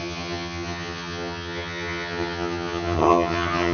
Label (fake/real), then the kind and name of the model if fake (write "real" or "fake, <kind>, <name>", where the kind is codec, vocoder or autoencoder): fake, vocoder, HiFi-GAN